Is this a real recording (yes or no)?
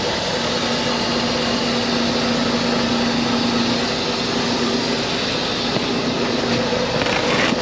yes